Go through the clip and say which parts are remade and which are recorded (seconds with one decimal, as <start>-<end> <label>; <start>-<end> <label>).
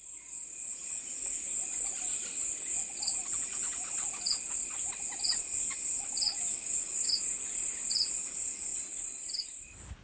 0.0-6.5 recorded; 6.5-7.1 remade; 7.1-10.0 recorded